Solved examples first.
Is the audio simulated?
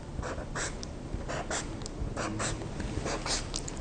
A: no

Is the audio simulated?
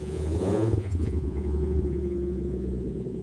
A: yes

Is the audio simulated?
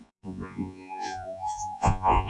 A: yes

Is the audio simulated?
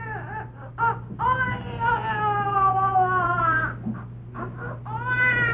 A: no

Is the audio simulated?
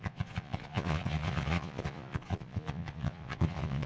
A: yes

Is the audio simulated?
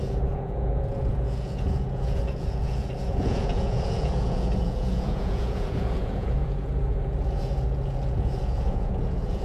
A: yes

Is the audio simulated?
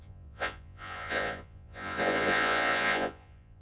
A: yes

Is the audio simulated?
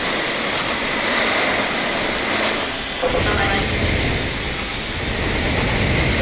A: no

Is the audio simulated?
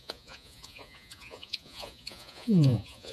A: yes